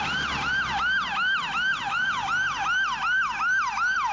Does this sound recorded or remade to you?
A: recorded